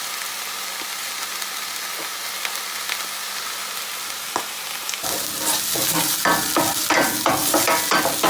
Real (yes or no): yes